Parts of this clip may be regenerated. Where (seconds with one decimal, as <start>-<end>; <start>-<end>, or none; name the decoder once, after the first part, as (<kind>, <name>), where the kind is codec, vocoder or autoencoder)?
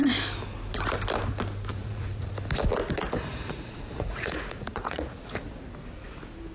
1.7-2.3 (vocoder, Vocos); 3.3-5.4